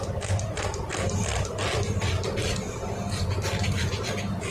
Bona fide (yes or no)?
yes